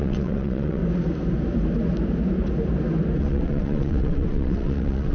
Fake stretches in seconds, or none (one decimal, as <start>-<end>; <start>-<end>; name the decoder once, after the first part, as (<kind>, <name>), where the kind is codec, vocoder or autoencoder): 0.0-0.8 (vocoder, WaveNeXt); 3.2-5.1